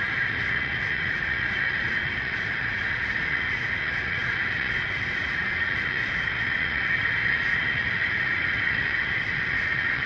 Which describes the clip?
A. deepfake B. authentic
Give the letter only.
A